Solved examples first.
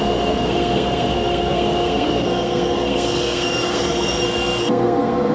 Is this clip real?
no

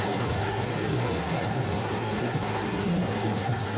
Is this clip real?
no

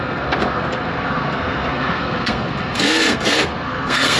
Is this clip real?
no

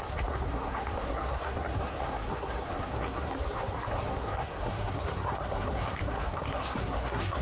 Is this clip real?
no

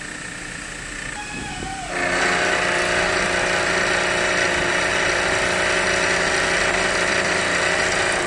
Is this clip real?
yes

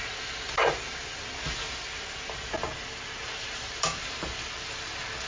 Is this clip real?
yes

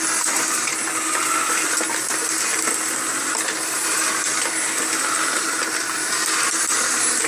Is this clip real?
yes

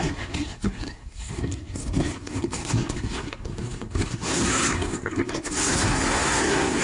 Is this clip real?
no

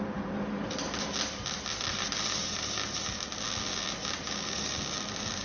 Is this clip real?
yes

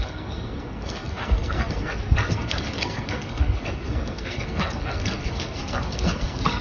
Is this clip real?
no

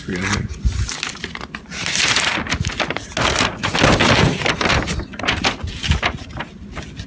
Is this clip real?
yes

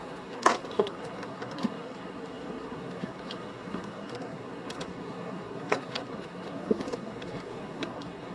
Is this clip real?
no